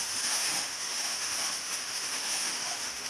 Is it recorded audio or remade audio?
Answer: remade